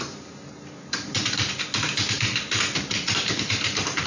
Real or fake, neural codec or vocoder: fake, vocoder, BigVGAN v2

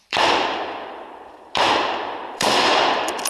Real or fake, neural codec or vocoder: fake, vocoder, BigVGAN v2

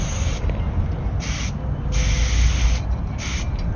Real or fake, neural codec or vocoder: real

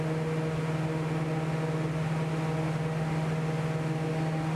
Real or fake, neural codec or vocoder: real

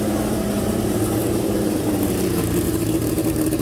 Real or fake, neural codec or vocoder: fake, vocoder, BigVGAN v2